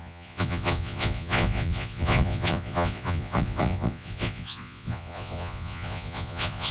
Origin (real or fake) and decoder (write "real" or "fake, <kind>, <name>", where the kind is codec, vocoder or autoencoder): fake, vocoder, Vocos